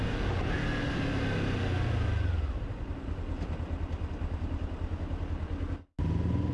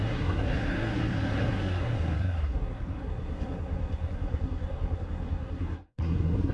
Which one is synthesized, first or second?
second